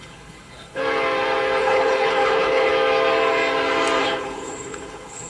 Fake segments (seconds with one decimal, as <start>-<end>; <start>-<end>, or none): 0.0-0.8; 1.6-2.7; 4.0-5.3